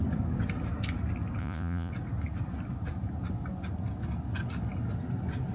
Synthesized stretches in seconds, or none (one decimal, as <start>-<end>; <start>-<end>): 1.4-1.9